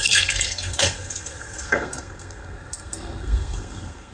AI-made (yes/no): yes